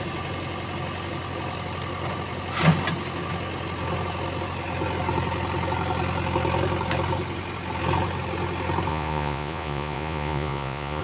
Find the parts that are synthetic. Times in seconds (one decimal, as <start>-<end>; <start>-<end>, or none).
8.9-11.0